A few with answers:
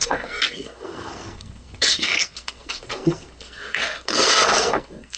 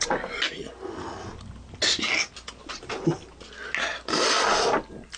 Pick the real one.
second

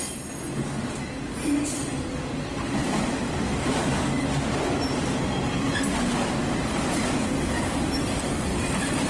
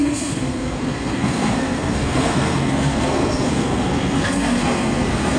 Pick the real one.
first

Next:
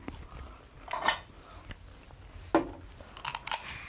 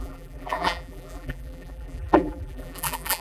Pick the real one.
first